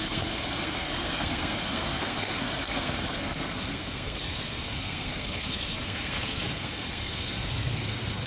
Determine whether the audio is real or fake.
fake